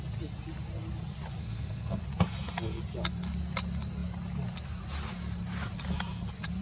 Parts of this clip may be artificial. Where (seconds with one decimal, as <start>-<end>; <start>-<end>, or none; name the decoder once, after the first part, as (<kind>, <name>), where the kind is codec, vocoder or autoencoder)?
1.4-2.0 (codec, SNAC)

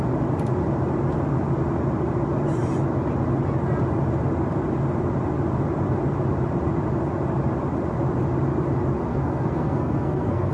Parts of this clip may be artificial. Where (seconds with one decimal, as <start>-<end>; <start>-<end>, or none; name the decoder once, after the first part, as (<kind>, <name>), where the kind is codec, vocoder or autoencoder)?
9.1-10.5 (codec, SNAC)

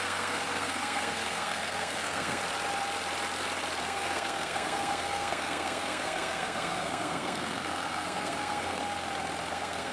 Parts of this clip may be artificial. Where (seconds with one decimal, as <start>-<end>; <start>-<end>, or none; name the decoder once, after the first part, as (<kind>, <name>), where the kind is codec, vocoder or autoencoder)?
0.0-2.4 (codec, SNAC); 3.8-8.8; 9.5-9.9

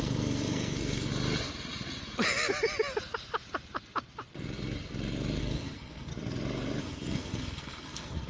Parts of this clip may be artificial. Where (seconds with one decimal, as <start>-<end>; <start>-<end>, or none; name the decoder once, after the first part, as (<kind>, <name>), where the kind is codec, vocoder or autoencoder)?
0.0-1.1 (codec, SNAC); 5.4-6.1; 6.8-8.3

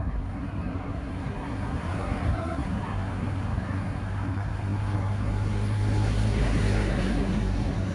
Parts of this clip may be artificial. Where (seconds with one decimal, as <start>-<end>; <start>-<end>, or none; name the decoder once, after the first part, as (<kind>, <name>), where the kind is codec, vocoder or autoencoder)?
0.0-7.9 (codec, SNAC)

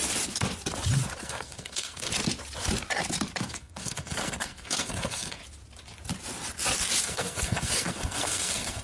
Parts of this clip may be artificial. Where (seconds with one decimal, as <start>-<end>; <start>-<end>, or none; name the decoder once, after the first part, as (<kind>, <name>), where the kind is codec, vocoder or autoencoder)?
1.2-2.1 (codec, SNAC); 3.4-5.4; 7.0-8.8